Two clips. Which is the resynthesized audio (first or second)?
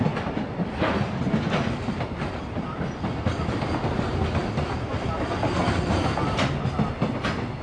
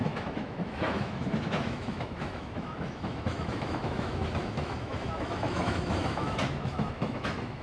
second